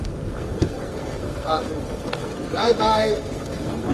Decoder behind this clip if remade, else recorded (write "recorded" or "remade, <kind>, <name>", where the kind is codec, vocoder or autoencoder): remade, codec, SNAC